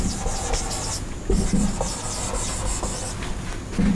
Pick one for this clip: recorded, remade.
recorded